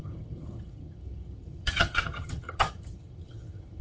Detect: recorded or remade remade